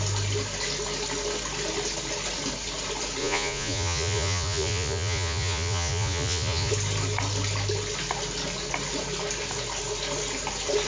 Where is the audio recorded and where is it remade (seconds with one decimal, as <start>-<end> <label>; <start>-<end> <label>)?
0.0-3.2 recorded; 3.2-6.7 remade; 6.7-10.9 recorded